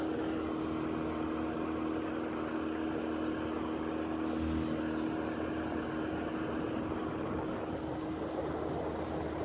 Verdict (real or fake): real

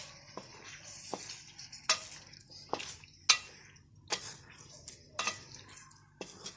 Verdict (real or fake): real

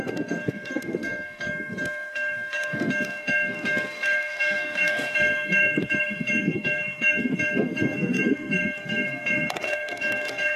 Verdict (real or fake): fake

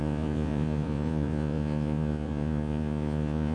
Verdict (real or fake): fake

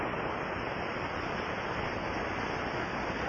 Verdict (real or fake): real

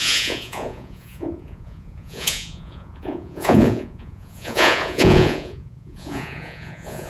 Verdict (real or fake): fake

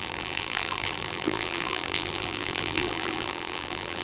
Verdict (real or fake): fake